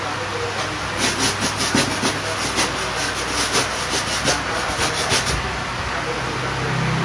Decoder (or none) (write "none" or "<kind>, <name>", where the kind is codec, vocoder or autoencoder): none